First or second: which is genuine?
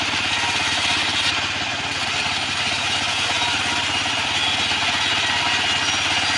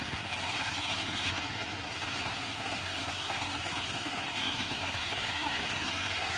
first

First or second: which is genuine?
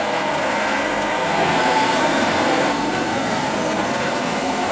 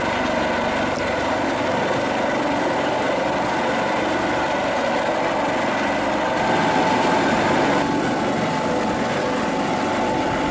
second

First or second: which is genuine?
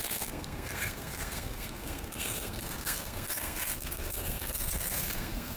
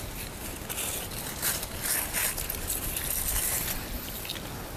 second